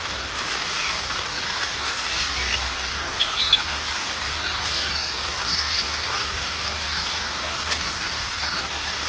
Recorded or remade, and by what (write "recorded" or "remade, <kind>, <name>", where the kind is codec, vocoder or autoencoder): remade, codec, DAC